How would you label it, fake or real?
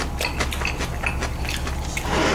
real